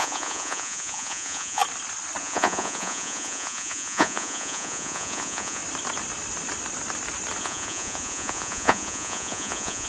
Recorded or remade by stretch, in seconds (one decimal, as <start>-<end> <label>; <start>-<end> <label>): 0.0-1.6 remade; 1.6-2.2 recorded; 2.2-5.6 remade; 5.6-7.4 recorded; 7.4-9.9 remade